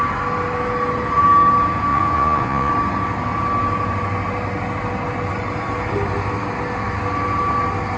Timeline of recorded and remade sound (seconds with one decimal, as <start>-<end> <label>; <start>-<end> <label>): 0.0-1.9 recorded; 1.9-2.7 remade; 2.7-8.0 recorded